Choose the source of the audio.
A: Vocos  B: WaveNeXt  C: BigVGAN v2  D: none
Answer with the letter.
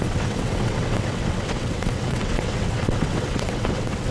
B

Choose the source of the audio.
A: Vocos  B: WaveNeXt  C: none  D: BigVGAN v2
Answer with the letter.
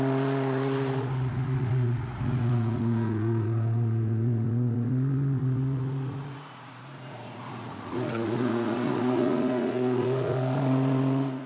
A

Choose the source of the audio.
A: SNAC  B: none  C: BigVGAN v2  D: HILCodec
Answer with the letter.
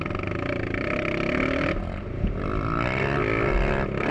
B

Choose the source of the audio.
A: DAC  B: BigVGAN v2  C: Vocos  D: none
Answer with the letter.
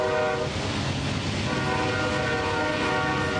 D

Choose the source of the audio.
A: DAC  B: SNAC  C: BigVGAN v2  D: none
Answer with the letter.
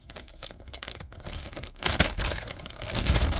B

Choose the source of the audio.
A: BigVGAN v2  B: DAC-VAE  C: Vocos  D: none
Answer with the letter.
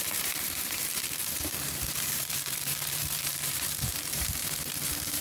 A